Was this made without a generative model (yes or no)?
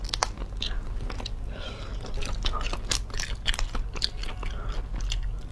yes